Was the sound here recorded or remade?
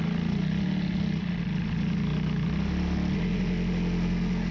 recorded